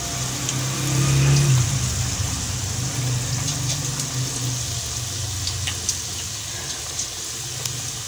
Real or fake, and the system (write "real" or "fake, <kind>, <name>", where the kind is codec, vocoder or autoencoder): real